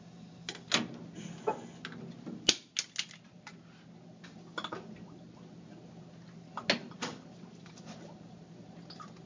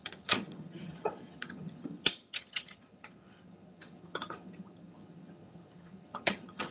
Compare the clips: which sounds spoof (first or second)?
second